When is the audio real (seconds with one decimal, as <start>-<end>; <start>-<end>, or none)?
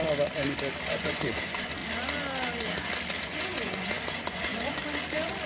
0.0-0.9; 1.8-3.2; 4.8-5.5